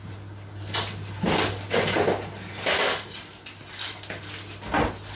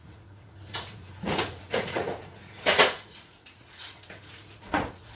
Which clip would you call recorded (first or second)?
first